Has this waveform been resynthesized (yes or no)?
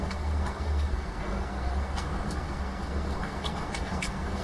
yes